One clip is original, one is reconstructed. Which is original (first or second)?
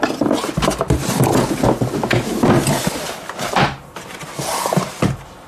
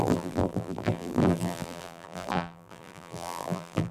first